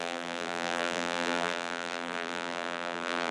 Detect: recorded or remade remade